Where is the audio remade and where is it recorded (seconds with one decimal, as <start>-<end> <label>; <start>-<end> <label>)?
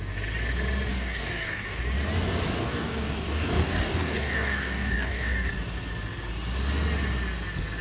0.0-0.9 recorded; 0.9-1.8 remade; 1.8-2.6 recorded; 2.6-5.5 remade; 5.5-7.8 recorded